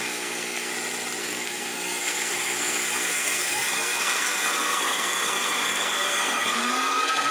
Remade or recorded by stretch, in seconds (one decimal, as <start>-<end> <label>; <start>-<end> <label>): 0.0-0.7 remade; 0.7-1.2 recorded; 1.2-7.3 remade